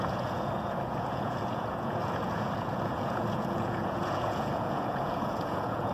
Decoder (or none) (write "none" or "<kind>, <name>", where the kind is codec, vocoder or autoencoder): vocoder, Vocos